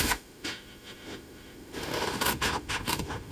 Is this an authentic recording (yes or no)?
no